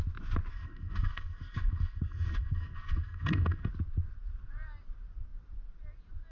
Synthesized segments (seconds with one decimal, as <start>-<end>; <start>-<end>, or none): 0.5-3.7